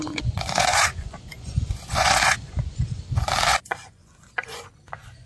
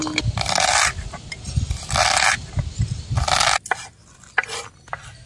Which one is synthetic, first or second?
first